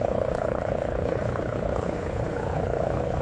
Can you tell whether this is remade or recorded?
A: remade